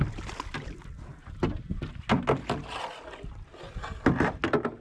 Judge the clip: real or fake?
real